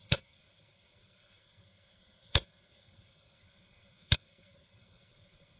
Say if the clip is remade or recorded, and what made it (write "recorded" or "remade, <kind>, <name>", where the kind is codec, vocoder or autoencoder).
remade, codec, SNAC